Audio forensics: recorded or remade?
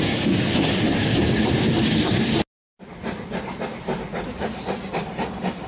recorded